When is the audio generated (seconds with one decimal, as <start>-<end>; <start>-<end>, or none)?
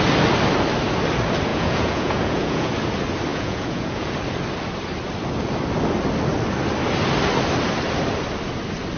1.5-2.7; 3.3-4.1